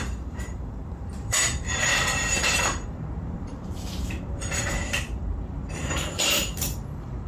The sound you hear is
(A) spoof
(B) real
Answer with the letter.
A